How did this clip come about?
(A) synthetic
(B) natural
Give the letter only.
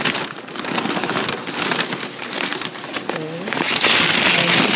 B